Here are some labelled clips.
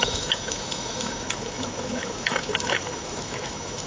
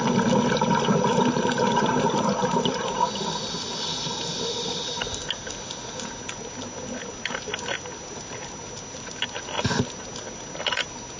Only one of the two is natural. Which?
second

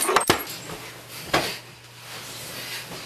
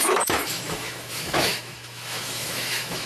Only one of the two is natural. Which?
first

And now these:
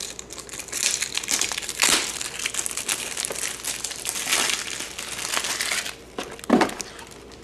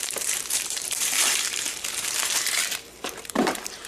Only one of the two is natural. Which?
first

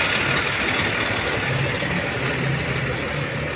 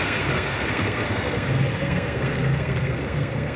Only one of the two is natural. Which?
first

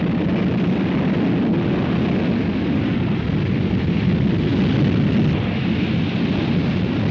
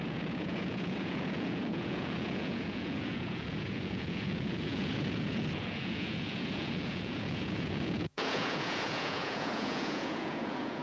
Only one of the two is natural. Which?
first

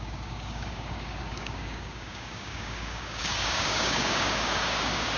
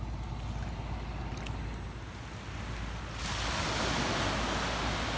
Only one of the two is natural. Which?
second